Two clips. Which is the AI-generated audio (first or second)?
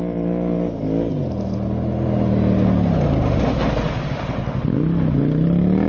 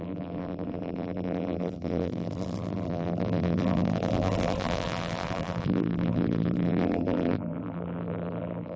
second